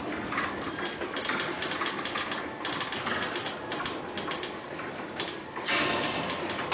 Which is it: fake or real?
real